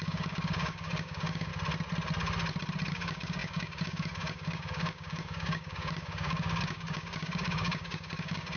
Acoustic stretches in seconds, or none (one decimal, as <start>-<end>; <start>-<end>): 1.5-2.9